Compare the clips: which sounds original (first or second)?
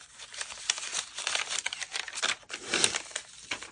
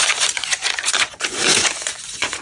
first